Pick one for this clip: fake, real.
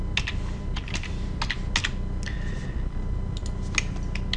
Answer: real